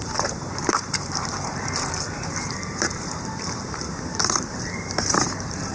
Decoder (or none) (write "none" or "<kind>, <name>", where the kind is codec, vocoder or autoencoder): vocoder, BigVGAN v2